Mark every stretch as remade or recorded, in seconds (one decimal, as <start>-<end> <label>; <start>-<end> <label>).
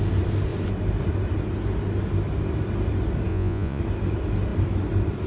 0.0-3.3 recorded; 3.3-3.8 remade; 3.8-5.3 recorded